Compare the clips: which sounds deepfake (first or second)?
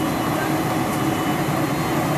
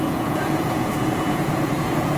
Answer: second